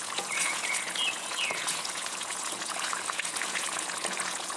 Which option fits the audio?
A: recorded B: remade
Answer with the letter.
B